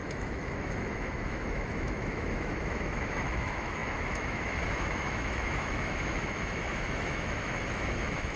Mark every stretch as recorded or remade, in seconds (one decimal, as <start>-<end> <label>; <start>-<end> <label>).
0.0-8.4 remade